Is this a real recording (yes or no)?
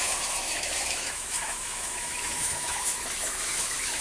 no